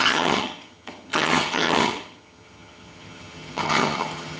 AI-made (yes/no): yes